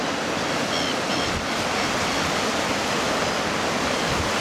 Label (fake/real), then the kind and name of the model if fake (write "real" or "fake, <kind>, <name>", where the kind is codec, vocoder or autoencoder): real